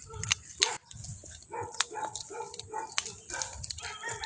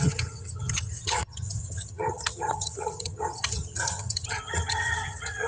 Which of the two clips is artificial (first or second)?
second